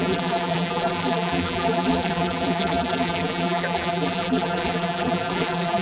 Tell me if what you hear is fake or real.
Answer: fake